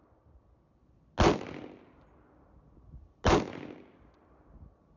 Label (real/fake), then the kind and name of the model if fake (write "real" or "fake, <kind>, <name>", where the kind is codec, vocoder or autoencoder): real